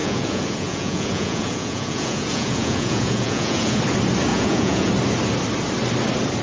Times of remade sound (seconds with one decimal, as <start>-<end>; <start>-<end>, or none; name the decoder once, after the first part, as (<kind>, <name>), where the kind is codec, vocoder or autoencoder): 0.0-3.8 (vocoder, Vocos); 4.3-4.9